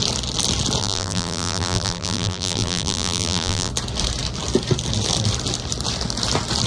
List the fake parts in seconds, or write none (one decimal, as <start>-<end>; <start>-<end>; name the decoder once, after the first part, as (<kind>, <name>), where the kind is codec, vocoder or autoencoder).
0.8-3.7 (vocoder, BigVGAN v2)